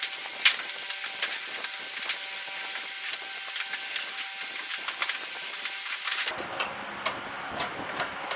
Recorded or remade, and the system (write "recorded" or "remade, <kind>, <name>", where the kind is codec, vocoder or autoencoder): recorded